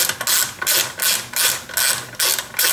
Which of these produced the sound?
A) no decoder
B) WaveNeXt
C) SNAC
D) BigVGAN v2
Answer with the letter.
A